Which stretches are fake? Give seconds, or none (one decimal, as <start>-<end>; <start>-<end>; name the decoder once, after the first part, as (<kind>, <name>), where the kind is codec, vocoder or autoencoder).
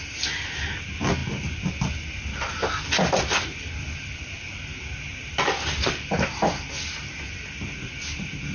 none